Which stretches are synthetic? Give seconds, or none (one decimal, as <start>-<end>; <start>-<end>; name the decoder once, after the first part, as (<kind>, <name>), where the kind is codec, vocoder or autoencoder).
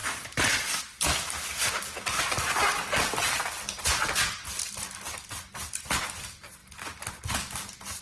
none